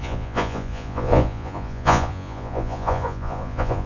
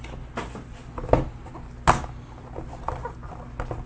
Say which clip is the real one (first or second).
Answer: second